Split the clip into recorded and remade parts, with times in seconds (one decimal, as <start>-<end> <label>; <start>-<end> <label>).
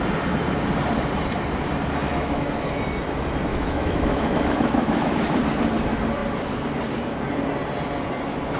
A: 0.0-2.1 recorded; 2.1-2.8 remade; 2.8-3.5 recorded; 3.5-5.4 remade; 5.4-8.6 recorded